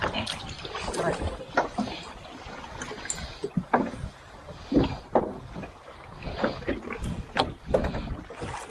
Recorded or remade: recorded